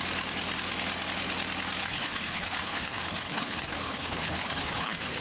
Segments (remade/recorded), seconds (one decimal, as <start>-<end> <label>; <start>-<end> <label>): 0.0-1.8 recorded; 1.8-5.2 remade